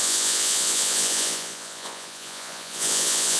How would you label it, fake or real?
fake